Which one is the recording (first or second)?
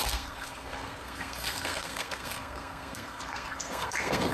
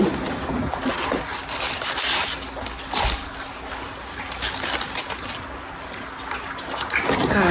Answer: second